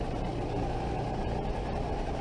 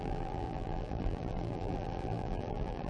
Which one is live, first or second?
first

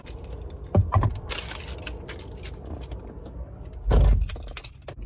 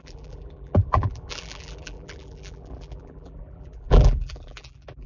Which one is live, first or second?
first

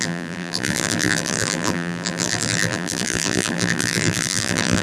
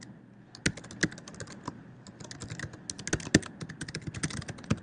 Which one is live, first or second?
second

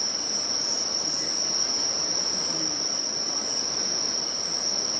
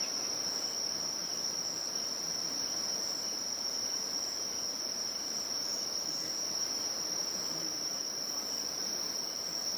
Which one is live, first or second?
first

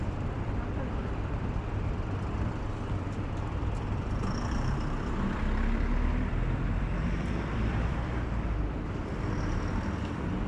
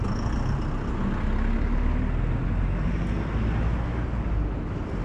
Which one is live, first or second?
second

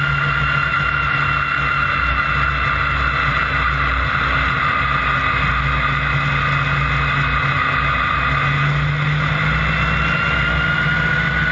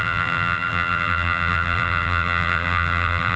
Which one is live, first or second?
first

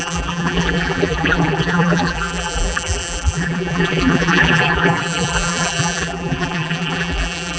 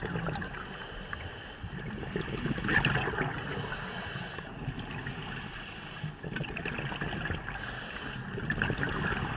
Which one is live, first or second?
second